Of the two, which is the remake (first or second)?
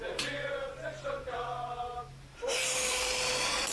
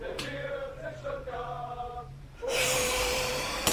second